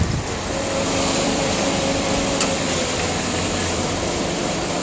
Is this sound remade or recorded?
remade